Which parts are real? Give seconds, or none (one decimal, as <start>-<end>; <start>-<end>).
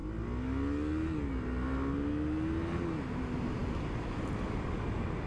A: 0.0-5.3